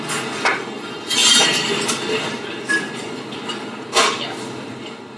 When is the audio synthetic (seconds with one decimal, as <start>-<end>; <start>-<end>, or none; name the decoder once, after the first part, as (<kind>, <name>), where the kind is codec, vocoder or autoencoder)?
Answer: none